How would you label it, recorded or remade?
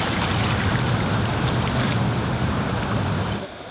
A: recorded